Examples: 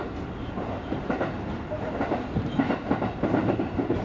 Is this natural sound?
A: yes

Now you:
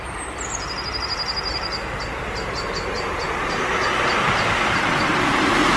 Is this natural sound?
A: yes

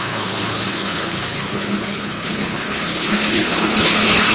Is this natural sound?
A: no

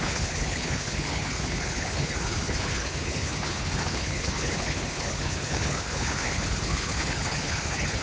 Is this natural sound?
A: no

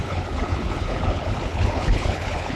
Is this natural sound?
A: no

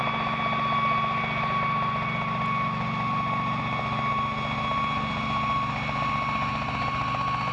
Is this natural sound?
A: yes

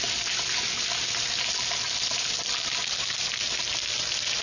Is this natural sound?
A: yes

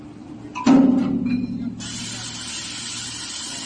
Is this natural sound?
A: yes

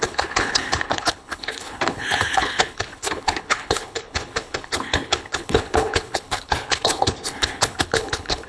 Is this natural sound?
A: no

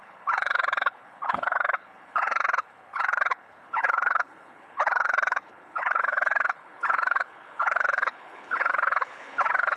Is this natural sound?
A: no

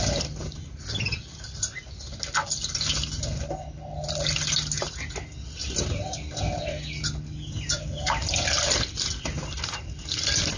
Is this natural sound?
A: yes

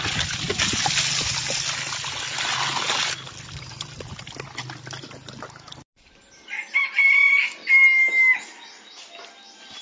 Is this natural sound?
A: yes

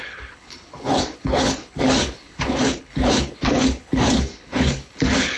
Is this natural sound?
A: no